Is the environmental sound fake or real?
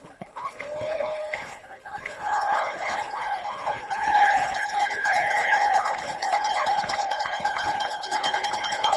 fake